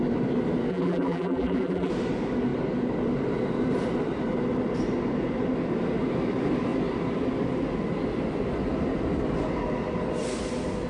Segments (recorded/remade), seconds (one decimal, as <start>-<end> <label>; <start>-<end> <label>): 0.0-0.7 recorded; 0.7-1.9 remade; 1.9-10.9 recorded